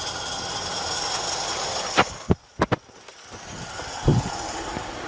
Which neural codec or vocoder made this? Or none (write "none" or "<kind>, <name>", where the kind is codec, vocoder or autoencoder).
none